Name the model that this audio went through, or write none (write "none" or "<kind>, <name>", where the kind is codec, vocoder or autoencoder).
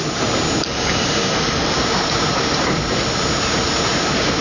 none